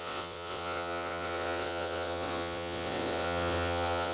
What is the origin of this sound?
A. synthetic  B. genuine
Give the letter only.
A